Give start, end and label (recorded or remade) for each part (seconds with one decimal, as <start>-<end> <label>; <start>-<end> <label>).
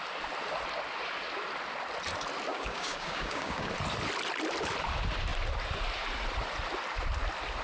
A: 0.0-2.5 recorded; 2.5-3.7 remade; 3.7-7.6 recorded